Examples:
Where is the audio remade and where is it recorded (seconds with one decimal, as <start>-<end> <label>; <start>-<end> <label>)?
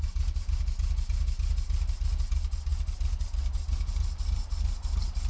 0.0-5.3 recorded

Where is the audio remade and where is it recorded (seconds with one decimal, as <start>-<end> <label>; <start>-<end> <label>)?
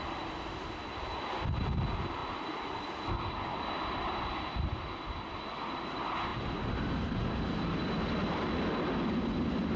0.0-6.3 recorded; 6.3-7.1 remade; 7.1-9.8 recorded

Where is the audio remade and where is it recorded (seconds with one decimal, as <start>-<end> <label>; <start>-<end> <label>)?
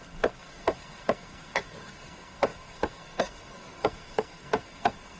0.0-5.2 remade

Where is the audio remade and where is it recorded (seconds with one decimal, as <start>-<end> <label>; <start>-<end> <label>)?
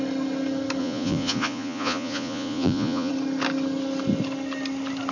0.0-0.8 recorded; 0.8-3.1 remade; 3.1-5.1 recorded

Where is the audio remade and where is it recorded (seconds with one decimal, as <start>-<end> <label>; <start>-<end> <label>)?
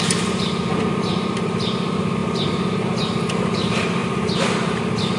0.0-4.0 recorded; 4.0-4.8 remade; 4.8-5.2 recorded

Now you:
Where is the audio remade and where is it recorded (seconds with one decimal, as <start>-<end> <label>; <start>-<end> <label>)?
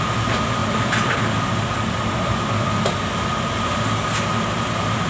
0.0-5.1 recorded